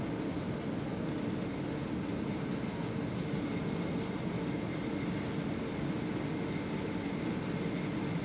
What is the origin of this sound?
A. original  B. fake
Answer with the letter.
A